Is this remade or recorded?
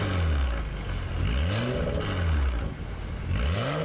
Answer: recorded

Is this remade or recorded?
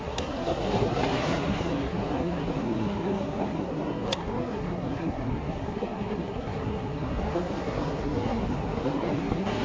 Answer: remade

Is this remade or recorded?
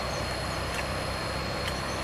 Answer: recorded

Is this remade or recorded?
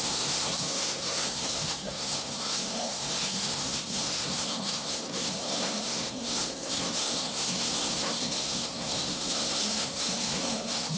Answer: remade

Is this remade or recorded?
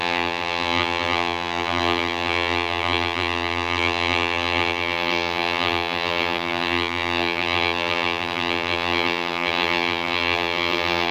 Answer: remade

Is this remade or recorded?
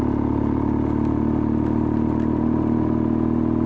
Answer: recorded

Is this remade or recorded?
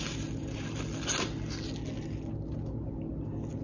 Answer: recorded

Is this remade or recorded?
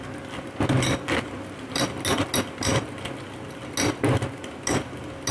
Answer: recorded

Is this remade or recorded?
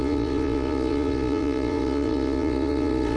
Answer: remade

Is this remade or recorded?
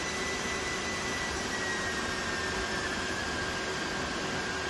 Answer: recorded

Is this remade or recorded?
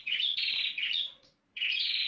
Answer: remade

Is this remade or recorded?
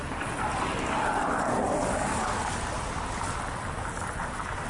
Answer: remade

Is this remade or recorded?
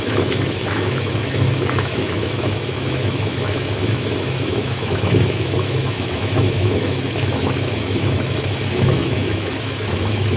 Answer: remade